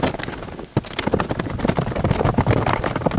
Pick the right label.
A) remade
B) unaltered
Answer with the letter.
B